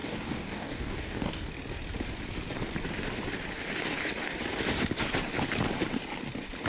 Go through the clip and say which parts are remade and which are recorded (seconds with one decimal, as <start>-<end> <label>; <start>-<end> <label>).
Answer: 0.0-1.5 remade; 1.5-6.7 recorded